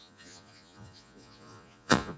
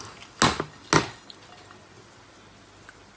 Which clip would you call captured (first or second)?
second